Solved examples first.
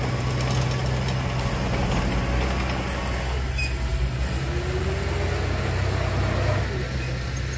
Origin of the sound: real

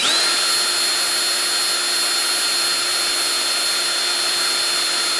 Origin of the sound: real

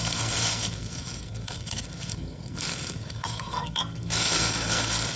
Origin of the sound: fake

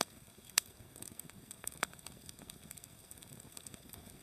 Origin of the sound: fake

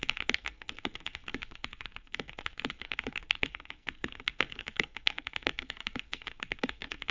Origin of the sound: fake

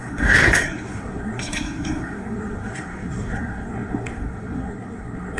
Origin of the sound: fake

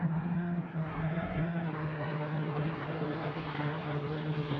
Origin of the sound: fake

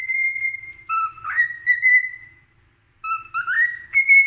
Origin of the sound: real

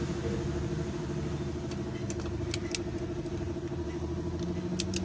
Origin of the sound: real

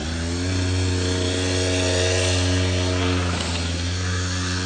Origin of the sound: real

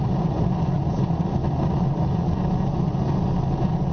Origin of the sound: real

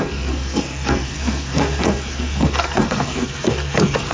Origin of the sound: fake